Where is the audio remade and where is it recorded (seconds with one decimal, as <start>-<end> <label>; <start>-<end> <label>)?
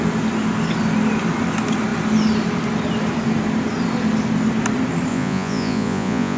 0.0-5.1 recorded; 5.1-6.4 remade